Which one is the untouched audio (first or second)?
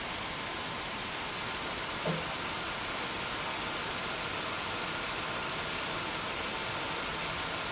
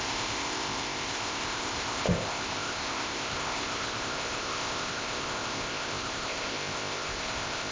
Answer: first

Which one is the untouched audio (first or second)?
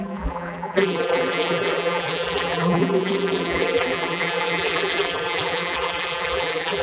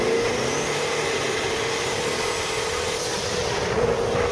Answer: second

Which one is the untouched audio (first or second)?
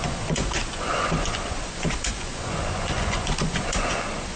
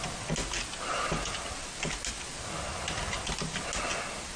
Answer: second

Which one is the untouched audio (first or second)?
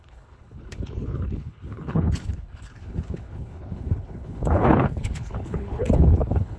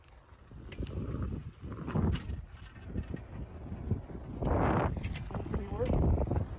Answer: second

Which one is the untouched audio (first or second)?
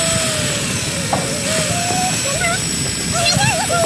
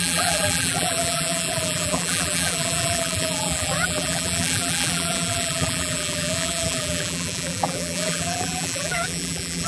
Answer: first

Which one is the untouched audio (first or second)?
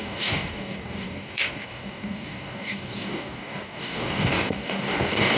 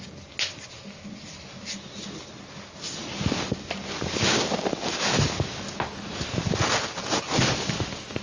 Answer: second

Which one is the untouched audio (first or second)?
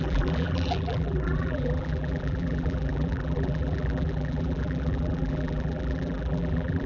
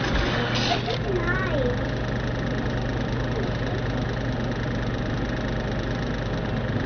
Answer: second